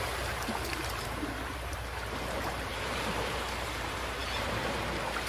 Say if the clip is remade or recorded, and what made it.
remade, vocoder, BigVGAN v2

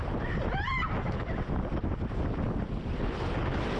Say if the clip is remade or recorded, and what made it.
recorded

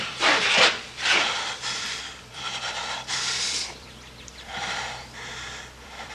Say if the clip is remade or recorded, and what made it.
remade, vocoder, BigVGAN v2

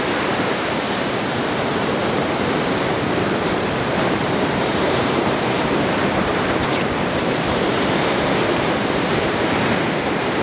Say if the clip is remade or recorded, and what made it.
remade, vocoder, BigVGAN v2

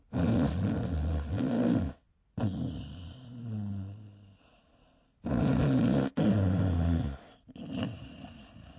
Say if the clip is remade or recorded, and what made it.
recorded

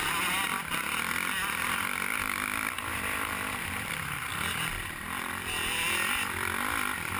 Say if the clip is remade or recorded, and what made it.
remade, vocoder, BigVGAN v2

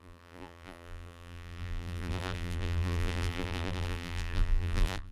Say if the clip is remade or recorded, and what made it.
remade, vocoder, BigVGAN v2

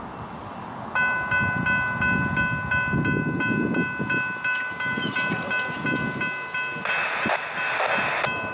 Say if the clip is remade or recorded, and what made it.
recorded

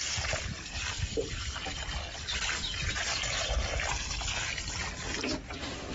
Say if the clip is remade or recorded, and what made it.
remade, vocoder, BigVGAN v2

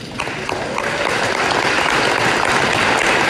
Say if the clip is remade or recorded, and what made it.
recorded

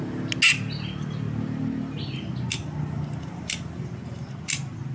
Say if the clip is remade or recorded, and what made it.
recorded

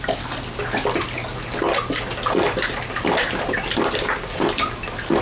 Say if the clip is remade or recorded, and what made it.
recorded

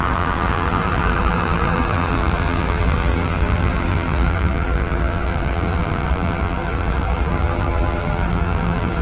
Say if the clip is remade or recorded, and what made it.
remade, vocoder, BigVGAN v2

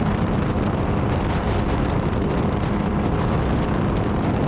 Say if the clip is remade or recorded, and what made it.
remade, vocoder, BigVGAN v2